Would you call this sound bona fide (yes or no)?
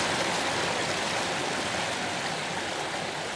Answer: yes